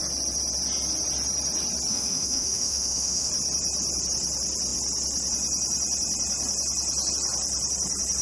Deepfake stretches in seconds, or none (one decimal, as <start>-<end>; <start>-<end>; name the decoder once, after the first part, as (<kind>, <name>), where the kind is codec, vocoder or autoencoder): 1.9-3.3 (autoencoder, DAC-VAE)